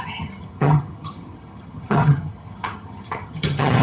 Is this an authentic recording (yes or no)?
no